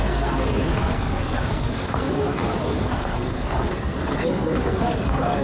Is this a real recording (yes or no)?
no